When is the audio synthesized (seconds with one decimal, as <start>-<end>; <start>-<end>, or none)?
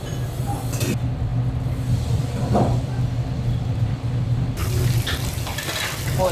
none